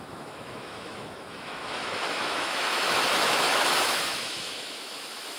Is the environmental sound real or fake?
fake